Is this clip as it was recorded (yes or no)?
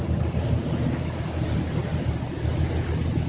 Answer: yes